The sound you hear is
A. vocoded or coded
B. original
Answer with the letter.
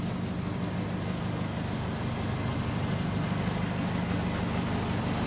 B